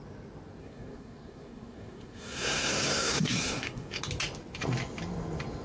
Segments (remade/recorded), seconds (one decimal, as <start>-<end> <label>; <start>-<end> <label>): 0.0-0.6 recorded; 0.6-4.0 remade; 4.0-5.6 recorded

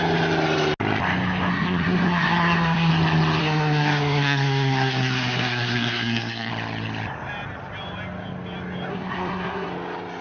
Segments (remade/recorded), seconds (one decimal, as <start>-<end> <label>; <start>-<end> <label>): 0.0-1.5 recorded; 1.5-2.9 remade; 2.9-3.4 recorded; 3.4-6.5 remade; 6.5-8.9 recorded; 8.9-9.7 remade; 9.7-10.2 recorded

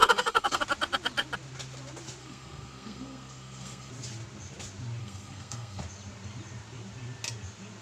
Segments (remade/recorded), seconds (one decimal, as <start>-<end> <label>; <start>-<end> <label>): 0.0-0.6 remade; 0.6-2.2 recorded; 2.2-3.9 remade; 3.9-5.0 recorded; 5.0-5.8 remade; 5.8-7.8 recorded

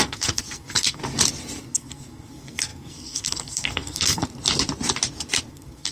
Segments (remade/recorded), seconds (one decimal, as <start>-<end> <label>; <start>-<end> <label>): 0.0-1.0 remade; 1.0-1.6 recorded; 1.6-4.2 remade; 4.2-5.5 recorded; 5.5-5.9 remade

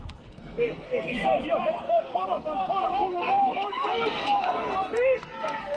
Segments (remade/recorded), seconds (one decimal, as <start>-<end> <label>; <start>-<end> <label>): 0.0-1.2 remade; 1.2-1.7 recorded; 1.7-5.8 remade